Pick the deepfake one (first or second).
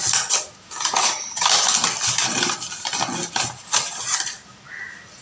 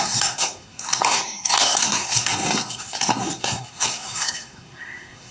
second